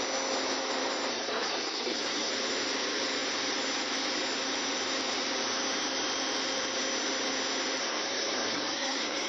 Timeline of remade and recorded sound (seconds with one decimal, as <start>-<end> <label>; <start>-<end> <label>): 0.0-1.1 recorded; 1.1-2.3 remade; 2.3-7.8 recorded; 7.8-9.3 remade